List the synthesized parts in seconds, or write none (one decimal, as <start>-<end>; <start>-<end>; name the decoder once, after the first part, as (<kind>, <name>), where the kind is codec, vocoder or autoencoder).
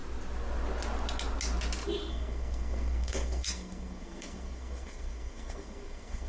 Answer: 2.1-6.3 (codec, SNAC)